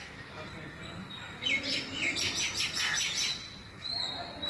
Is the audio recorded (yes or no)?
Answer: yes